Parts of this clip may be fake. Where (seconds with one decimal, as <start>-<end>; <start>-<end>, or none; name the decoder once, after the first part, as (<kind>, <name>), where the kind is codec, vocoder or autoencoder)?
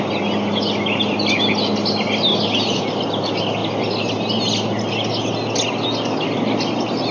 none